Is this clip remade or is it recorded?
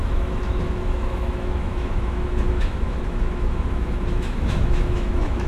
remade